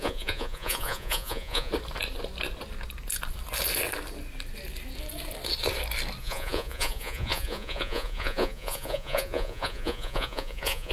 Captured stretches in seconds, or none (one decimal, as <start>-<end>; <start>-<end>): 1.7-6.2